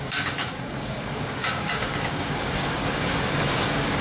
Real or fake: fake